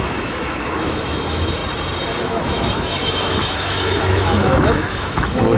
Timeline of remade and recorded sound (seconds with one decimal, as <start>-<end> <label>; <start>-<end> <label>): 0.0-1.6 remade; 1.6-2.2 recorded; 2.2-5.6 remade